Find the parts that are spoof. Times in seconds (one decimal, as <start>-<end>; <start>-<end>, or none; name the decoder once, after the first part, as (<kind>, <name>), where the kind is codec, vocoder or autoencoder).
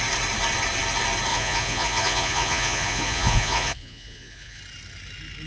1.3-4.6 (vocoder, Vocos)